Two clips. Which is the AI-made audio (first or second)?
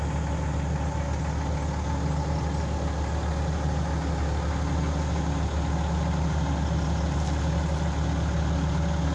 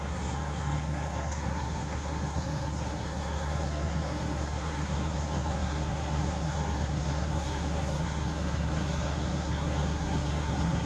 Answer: second